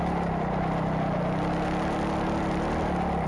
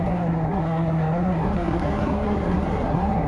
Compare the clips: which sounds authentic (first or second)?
first